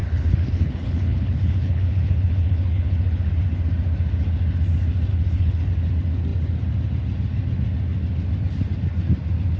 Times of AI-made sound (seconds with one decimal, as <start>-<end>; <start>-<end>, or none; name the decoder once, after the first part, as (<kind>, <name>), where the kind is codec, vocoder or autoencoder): 0.0-3.3 (codec, HILCodec); 5.1-5.7

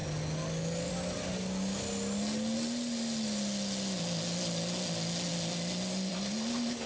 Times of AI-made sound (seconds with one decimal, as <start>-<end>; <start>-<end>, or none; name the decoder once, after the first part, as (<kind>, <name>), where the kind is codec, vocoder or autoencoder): none

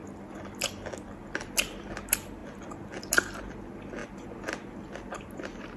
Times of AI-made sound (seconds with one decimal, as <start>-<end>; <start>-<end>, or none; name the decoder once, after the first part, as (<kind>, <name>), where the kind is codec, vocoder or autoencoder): none